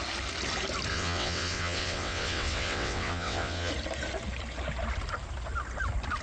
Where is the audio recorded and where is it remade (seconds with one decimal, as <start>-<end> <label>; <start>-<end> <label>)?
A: 0.0-0.9 recorded; 0.9-3.7 remade; 3.7-6.2 recorded